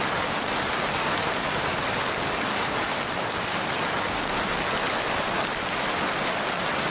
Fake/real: real